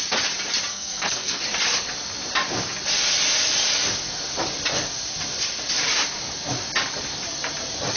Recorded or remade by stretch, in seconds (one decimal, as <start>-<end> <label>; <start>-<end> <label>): 0.0-0.7 recorded; 0.7-1.4 remade; 1.4-8.0 recorded

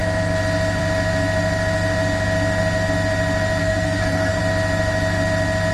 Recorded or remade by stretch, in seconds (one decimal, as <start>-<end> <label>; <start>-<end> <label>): 0.0-3.6 recorded; 3.6-4.4 remade; 4.4-5.7 recorded